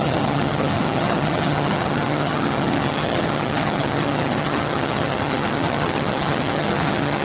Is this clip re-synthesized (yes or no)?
yes